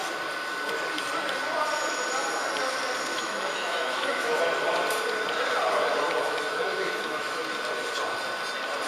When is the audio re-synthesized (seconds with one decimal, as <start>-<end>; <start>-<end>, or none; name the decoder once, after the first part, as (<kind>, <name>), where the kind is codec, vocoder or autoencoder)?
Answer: 3.1-4.4 (autoencoder, DAC-VAE); 6.2-7.4

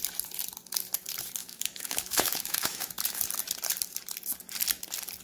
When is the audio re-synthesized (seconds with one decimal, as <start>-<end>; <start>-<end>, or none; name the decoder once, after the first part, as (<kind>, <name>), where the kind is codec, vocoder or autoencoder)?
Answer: 1.4-2.9 (autoencoder, DAC-VAE)

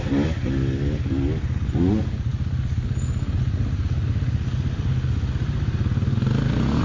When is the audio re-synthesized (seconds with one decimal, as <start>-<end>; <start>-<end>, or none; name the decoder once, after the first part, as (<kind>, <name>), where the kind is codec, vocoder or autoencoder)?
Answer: none

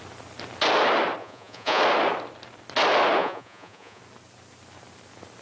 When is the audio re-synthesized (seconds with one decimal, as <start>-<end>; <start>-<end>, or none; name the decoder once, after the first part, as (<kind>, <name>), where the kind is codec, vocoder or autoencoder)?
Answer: 1.2-1.8 (vocoder, Vocos); 3.2-4.0

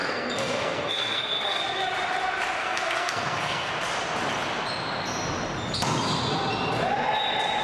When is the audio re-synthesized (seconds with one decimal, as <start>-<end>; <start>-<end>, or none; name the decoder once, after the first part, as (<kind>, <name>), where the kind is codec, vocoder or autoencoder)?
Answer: 0.0-1.6 (codec, SNAC); 2.6-3.7

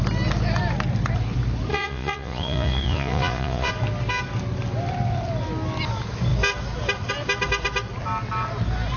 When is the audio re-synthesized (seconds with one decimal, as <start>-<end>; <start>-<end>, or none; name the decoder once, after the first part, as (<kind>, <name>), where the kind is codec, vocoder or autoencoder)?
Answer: 1.7-3.7 (vocoder, Vocos)